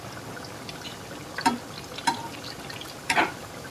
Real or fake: real